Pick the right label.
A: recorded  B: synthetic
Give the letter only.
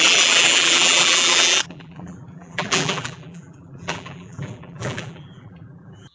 B